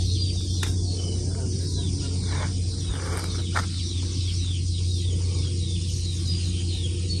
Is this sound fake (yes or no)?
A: no